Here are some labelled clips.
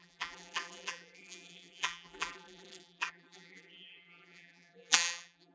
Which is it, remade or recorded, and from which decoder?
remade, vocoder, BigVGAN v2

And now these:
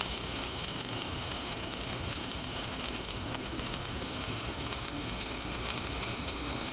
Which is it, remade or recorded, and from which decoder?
remade, autoencoder, DAC-VAE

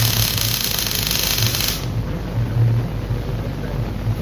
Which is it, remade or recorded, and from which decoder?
recorded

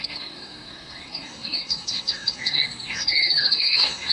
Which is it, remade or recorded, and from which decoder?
remade, codec, SNAC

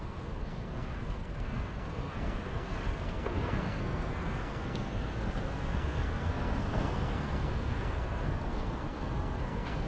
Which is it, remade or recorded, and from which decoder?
remade, codec, SNAC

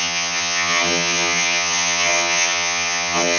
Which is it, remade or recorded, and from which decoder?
remade, vocoder, HiFi-GAN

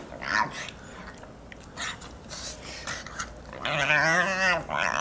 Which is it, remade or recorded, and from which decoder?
recorded